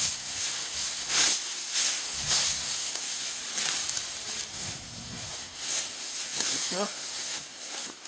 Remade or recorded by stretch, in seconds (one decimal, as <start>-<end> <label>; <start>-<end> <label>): 0.0-3.4 remade; 3.4-4.5 recorded; 4.5-8.1 remade